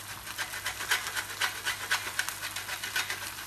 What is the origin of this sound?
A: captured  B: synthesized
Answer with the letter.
A